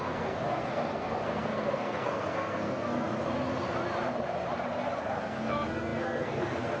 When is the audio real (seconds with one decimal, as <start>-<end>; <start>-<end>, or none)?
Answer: 3.1-5.2